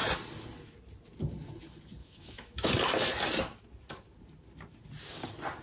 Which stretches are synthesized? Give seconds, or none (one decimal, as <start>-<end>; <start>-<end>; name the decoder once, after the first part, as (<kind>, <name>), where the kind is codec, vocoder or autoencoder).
2.0-2.7 (autoencoder, DAC-VAE)